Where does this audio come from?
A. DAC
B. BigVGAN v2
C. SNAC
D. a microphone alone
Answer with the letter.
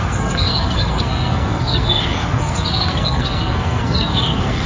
C